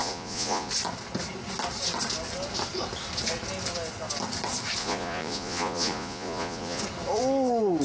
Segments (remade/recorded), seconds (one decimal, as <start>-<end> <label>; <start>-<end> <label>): 0.0-0.7 remade; 0.7-4.8 recorded; 4.8-6.8 remade; 6.8-7.8 recorded